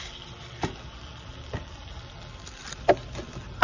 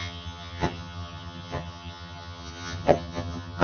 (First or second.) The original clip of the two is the first